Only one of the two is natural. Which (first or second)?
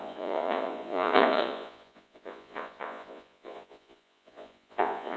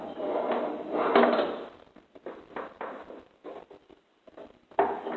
second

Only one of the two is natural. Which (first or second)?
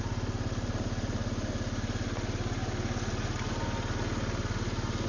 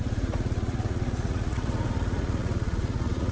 first